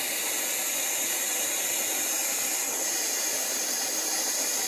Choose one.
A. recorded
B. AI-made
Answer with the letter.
A